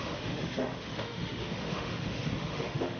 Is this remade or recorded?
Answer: remade